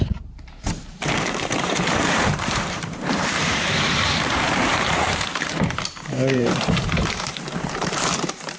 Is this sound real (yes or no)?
no